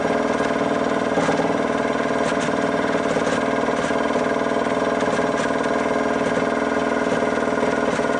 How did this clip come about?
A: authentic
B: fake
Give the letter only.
A